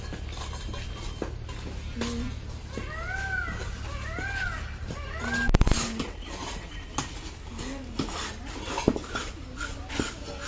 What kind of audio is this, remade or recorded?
recorded